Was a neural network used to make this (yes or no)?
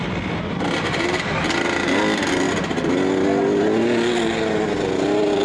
no